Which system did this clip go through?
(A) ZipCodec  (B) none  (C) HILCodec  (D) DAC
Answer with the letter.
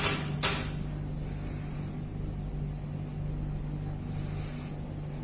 B